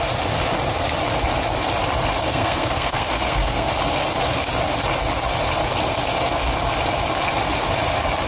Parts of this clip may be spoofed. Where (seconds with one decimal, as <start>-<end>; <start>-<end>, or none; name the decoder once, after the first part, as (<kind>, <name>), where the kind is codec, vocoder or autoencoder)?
2.2-3.7 (codec, SNAC)